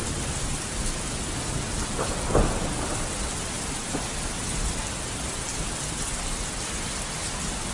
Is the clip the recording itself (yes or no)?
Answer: yes